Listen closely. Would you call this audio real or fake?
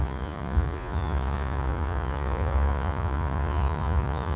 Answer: fake